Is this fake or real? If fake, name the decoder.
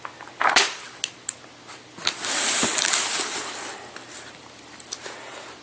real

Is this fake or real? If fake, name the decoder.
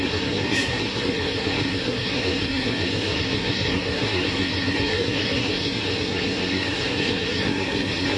fake, codec, SNAC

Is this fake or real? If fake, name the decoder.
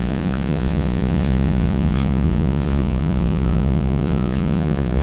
fake, vocoder, Vocos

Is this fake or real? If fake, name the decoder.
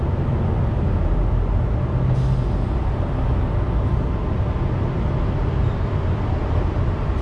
real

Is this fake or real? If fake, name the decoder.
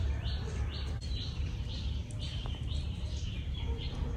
fake, vocoder, BigVGAN v2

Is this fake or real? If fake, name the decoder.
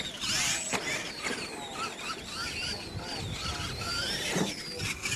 real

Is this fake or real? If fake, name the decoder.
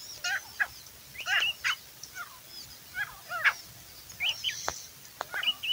real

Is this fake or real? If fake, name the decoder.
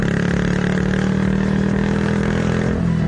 real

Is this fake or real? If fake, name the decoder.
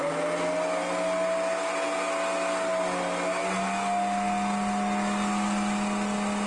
real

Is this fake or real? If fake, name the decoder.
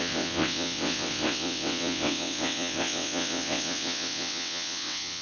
fake, vocoder, WaveNeXt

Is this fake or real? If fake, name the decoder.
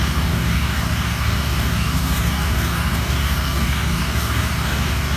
fake, codec, DAC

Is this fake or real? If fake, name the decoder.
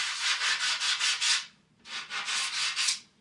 real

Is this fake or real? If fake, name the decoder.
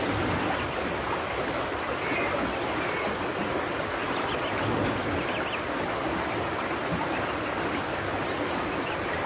real